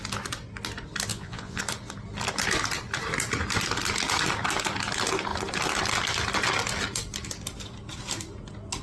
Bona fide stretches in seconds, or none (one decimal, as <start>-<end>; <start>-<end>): 0.0-1.1; 1.6-8.8